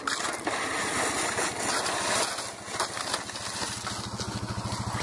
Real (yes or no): yes